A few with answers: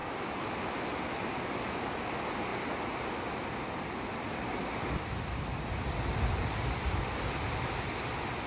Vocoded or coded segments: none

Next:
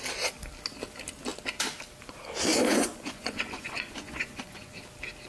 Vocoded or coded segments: 2.5-4.8 (vocoder, Vocos)